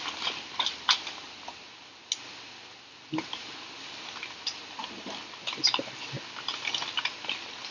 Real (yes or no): yes